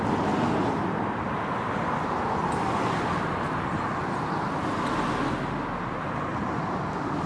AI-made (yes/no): no